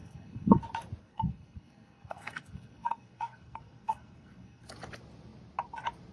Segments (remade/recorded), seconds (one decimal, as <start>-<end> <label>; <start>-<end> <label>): 0.0-0.6 remade; 0.6-1.0 recorded; 1.0-4.7 remade; 4.7-6.1 recorded